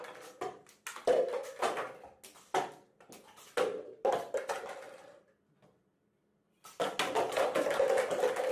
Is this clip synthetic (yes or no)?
no